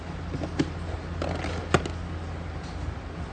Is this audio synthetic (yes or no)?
no